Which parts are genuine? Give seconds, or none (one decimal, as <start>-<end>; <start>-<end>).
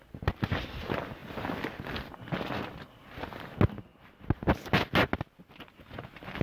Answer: 0.0-6.4